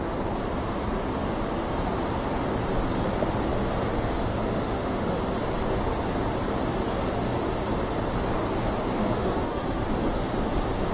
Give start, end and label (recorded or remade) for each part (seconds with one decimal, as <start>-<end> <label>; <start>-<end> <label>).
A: 0.0-4.3 recorded; 4.3-5.2 remade; 5.2-8.8 recorded; 8.8-10.5 remade; 10.5-10.9 recorded